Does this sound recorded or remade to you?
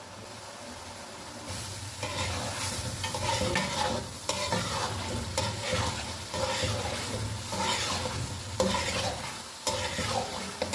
recorded